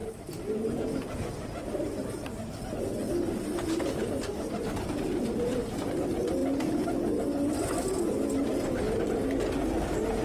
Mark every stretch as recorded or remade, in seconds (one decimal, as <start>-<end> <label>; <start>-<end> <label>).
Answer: 0.0-10.2 recorded